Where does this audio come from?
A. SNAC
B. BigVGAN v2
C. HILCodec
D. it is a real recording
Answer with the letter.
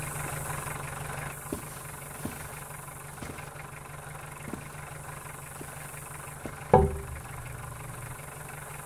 D